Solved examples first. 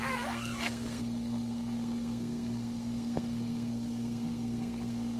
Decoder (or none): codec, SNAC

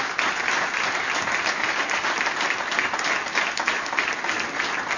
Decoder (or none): none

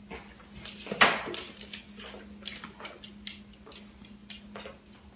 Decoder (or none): none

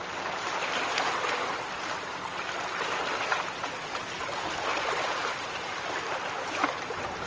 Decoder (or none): none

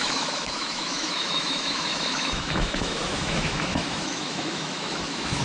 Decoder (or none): autoencoder, DAC-VAE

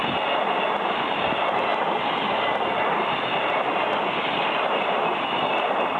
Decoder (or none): none